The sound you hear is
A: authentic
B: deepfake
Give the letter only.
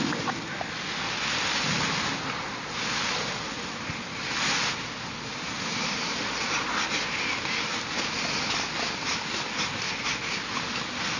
A